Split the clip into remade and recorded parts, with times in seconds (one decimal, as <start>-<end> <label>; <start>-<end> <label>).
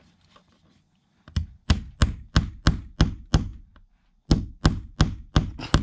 0.0-5.8 recorded